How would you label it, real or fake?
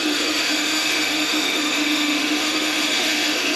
fake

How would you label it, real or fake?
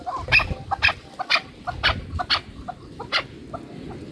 real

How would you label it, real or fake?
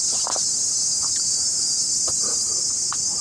real